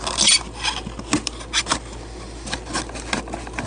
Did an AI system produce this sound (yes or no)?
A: no